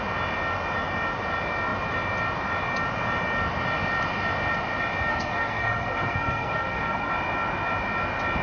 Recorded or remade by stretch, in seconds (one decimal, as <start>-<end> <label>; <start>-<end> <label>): 0.0-5.1 recorded; 5.1-7.1 remade; 7.1-8.4 recorded